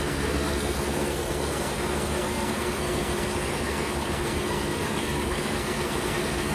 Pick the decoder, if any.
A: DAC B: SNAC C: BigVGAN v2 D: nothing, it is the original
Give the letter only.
B